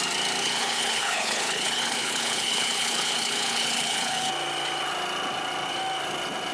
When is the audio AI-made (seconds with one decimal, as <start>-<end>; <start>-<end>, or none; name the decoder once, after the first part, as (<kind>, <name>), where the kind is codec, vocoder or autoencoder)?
0.4-4.3 (codec, HILCodec)